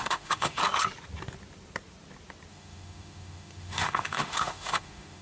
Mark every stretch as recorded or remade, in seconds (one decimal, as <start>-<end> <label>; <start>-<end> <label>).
0.0-0.6 remade; 0.6-2.5 recorded; 2.5-5.2 remade